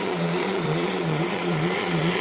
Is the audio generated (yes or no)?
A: yes